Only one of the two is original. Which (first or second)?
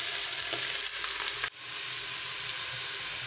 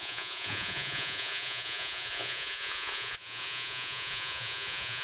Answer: first